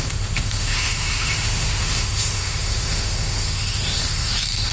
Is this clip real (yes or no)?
no